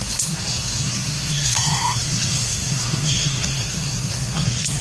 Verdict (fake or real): fake